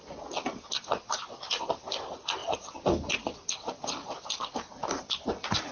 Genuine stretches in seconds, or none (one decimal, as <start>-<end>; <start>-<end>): 0.0-5.7